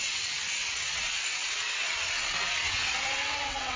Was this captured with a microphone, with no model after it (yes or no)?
no